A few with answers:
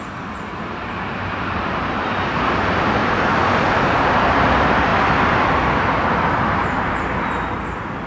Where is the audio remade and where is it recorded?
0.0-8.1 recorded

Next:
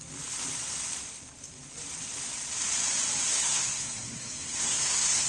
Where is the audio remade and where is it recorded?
0.0-3.3 recorded; 3.3-5.3 remade